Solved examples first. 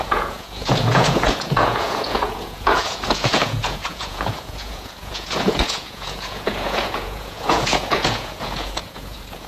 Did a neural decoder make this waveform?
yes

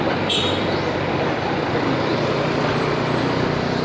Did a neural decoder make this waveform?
yes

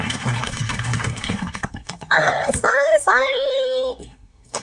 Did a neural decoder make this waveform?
yes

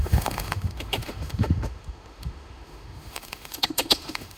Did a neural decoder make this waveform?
yes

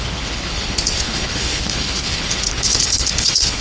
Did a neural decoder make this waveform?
yes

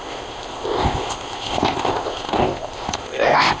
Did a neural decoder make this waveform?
yes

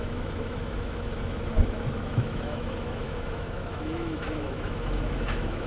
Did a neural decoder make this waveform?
yes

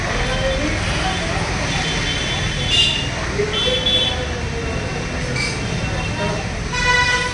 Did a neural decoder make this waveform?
no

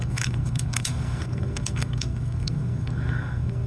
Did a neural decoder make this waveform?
yes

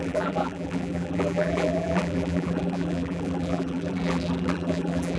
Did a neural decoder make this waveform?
yes